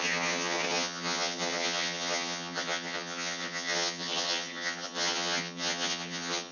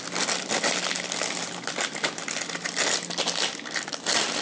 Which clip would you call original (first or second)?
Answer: second